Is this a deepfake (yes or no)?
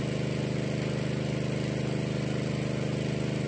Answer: no